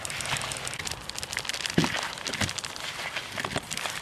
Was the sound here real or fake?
real